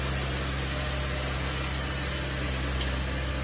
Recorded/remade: recorded